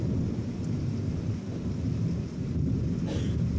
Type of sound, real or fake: real